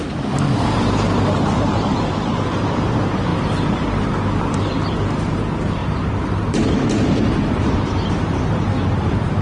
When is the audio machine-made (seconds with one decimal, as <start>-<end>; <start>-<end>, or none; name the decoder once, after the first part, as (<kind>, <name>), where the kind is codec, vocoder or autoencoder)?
0.0-3.3 (vocoder, BigVGAN v2); 5.3-9.4